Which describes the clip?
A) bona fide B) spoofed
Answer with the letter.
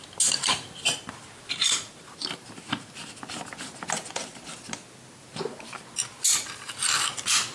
A